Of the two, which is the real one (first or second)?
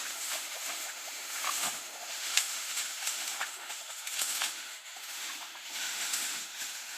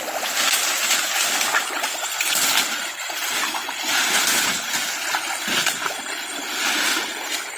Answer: second